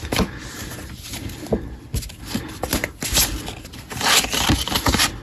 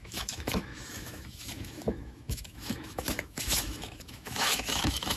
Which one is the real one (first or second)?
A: first